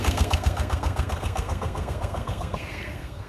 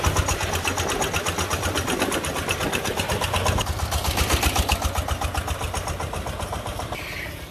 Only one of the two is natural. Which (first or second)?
second